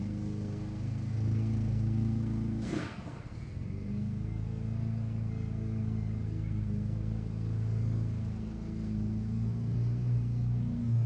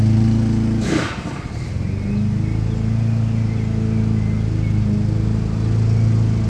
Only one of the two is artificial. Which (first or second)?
first